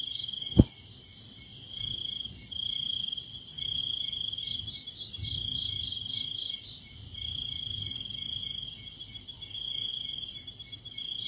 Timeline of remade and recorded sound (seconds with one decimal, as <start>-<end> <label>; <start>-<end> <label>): 0.0-1.5 recorded; 1.5-3.8 remade; 3.8-5.5 recorded; 5.5-8.4 remade; 8.4-9.9 recorded; 9.9-10.5 remade; 10.5-11.3 recorded